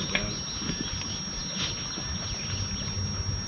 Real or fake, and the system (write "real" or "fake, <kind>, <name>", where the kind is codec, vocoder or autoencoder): real